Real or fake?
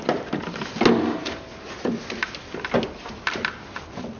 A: real